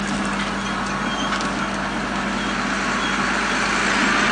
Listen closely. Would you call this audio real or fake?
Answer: real